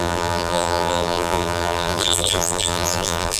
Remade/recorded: remade